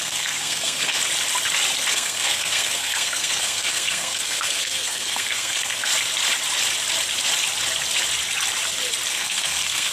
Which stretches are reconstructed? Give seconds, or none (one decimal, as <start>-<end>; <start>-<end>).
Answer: 0.0-1.0; 1.9-5.9; 9.1-9.9